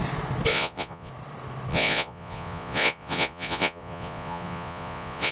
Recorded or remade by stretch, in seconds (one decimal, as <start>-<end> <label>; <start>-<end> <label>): 0.0-0.5 recorded; 0.5-1.1 remade; 1.1-1.7 recorded; 1.7-5.3 remade